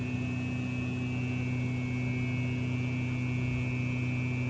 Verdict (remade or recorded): recorded